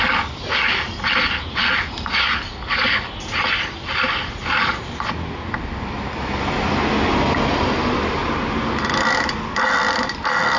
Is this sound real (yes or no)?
yes